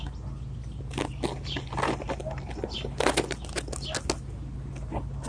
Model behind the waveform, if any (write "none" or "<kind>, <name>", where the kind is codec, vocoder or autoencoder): none